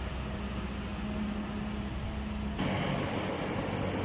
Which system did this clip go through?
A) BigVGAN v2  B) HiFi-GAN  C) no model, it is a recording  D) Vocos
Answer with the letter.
C